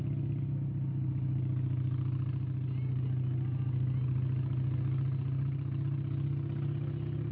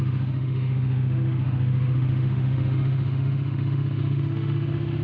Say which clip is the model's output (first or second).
second